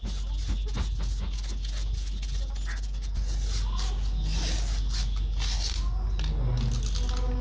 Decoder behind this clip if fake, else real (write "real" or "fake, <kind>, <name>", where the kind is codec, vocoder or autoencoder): real